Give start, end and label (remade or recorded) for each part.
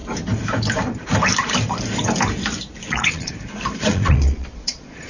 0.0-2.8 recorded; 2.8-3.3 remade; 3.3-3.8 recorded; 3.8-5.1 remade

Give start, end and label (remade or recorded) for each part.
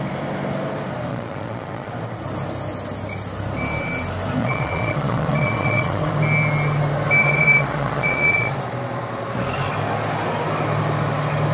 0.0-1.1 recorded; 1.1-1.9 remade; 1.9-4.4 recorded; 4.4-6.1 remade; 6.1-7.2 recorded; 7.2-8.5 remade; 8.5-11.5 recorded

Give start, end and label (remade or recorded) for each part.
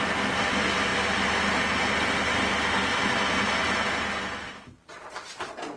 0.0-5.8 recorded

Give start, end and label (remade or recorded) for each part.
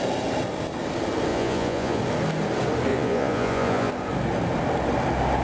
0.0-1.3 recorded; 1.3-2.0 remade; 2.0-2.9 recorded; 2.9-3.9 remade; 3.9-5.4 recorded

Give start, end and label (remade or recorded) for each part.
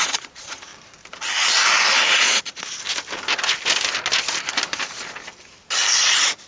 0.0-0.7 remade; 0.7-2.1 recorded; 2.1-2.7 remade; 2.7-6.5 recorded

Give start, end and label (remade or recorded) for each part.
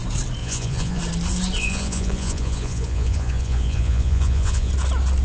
0.0-0.4 recorded; 0.4-1.0 remade; 1.0-1.6 recorded; 1.6-4.7 remade; 4.7-5.2 recorded